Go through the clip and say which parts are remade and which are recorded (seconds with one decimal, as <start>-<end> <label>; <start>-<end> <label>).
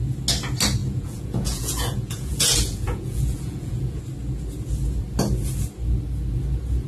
0.0-0.8 recorded; 0.8-4.0 remade; 4.0-6.9 recorded